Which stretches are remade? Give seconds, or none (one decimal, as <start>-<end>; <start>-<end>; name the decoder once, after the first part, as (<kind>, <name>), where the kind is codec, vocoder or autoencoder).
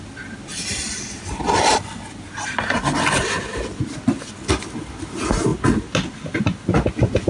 none